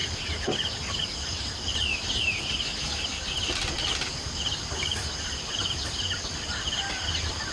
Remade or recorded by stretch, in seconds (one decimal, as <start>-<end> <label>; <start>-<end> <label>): 0.0-1.7 recorded; 1.7-2.5 remade; 2.5-7.5 recorded